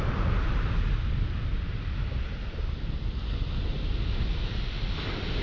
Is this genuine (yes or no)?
yes